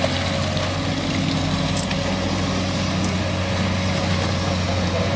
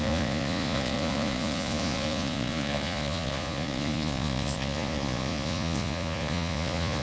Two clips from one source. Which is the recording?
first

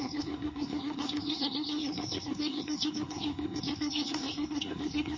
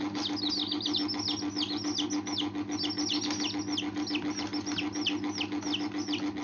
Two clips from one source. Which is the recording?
second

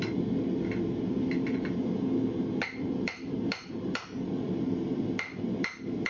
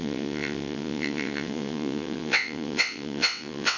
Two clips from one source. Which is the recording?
first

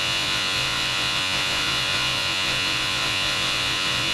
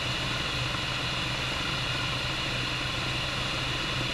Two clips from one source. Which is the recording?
second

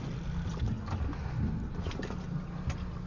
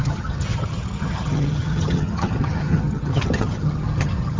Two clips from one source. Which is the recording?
first